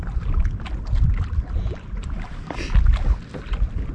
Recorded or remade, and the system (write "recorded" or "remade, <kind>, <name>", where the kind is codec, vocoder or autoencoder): recorded